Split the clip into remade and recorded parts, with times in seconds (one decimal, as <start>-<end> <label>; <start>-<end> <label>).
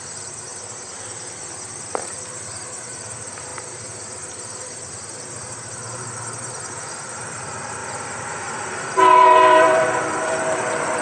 0.0-0.5 remade; 0.5-1.7 recorded; 1.7-7.8 remade; 7.8-8.6 recorded; 8.6-11.0 remade